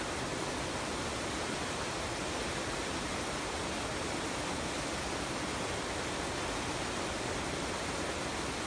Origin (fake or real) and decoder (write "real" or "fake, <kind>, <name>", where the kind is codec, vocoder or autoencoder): real